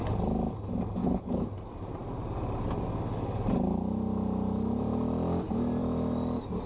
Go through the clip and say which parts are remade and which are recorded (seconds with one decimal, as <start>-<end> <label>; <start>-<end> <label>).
0.0-1.0 recorded; 1.0-1.5 remade; 1.5-6.7 recorded